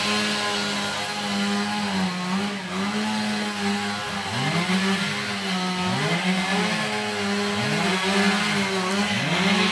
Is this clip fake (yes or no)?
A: no